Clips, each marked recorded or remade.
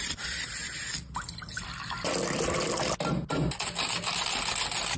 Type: recorded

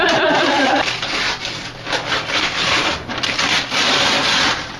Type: remade